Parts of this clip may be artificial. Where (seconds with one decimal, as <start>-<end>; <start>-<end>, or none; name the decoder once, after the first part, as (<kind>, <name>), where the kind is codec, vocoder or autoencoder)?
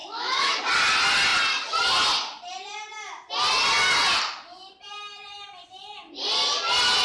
0.0-0.6 (autoencoder, DAC-VAE)